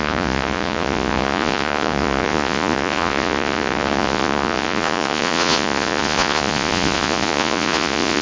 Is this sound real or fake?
fake